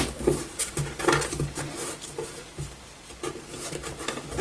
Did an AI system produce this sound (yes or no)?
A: no